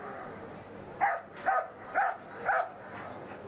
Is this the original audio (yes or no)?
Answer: yes